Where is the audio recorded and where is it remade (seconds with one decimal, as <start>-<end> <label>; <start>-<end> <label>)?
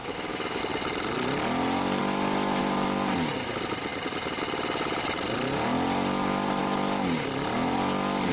0.0-0.6 remade; 0.6-8.3 recorded